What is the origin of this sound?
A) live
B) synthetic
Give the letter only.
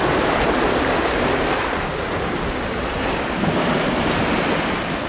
A